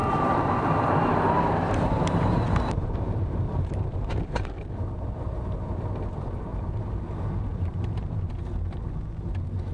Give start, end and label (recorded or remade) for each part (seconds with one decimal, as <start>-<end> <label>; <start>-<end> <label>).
0.0-4.7 remade; 4.7-6.5 recorded; 6.5-7.0 remade; 7.0-7.5 recorded; 7.5-8.3 remade; 8.3-9.7 recorded